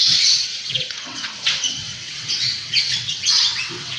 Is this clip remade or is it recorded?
remade